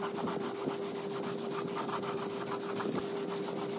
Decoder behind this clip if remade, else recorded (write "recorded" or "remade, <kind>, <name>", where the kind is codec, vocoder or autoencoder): recorded